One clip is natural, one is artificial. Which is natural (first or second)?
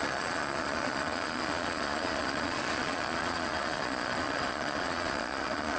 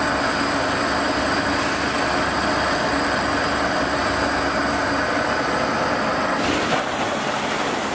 second